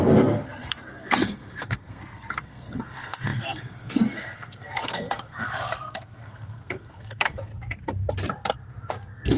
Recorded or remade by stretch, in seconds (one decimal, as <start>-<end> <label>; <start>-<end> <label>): 0.0-7.5 remade; 7.5-8.9 recorded; 8.9-9.4 remade